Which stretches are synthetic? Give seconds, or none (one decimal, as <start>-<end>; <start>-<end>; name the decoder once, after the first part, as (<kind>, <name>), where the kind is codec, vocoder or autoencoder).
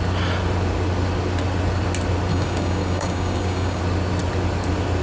2.3-3.8 (codec, DAC)